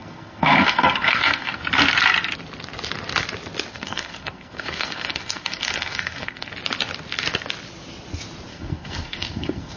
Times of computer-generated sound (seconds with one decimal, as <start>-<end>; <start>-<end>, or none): 0.0-1.6; 3.7-6.5; 8.5-9.8